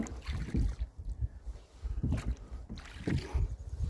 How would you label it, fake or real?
real